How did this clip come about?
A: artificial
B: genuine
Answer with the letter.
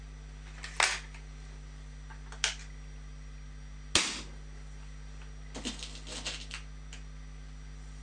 B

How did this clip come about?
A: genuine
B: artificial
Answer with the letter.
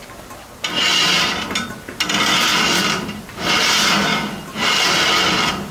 A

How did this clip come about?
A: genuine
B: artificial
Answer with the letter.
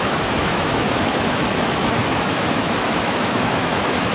B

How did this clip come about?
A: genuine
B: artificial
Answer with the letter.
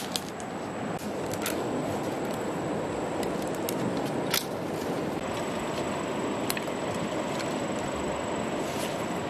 A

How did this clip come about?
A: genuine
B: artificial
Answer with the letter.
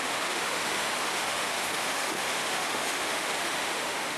B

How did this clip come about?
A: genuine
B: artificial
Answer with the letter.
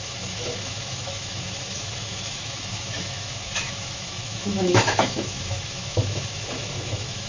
B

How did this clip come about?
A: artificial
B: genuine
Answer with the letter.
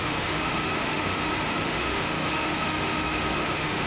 A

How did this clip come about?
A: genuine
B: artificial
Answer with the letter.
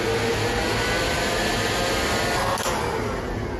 A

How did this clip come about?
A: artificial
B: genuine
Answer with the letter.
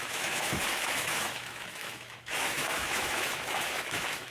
A